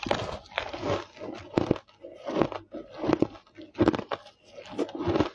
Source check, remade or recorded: recorded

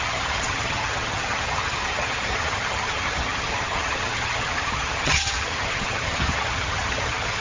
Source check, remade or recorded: remade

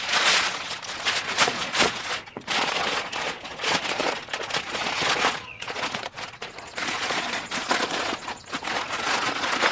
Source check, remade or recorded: remade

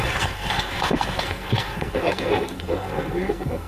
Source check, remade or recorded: remade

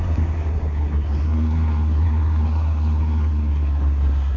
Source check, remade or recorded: remade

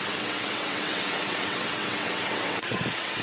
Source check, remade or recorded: remade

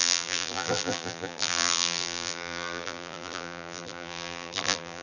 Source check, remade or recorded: remade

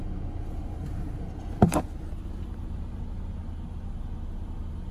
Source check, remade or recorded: recorded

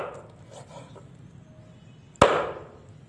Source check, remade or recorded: recorded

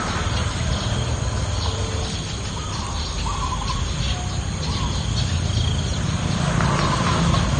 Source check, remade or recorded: recorded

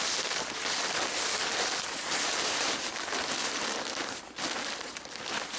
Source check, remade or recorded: recorded